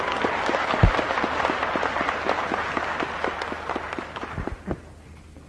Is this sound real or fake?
real